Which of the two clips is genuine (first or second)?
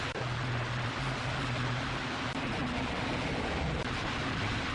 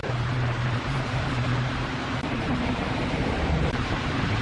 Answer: first